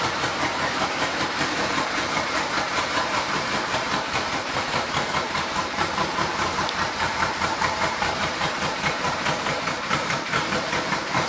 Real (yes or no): no